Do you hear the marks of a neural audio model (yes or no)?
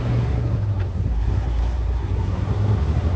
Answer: yes